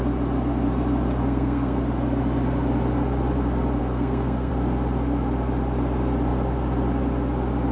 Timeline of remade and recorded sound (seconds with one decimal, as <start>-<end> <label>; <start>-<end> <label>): 0.0-1.2 recorded; 1.2-1.8 remade; 1.8-3.8 recorded; 3.8-4.5 remade; 4.5-7.7 recorded